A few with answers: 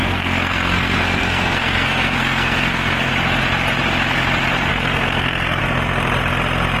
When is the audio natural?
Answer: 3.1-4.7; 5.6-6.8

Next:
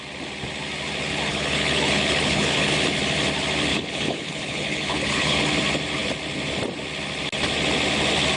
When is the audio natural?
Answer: 0.0-1.3; 2.7-3.7; 5.4-8.4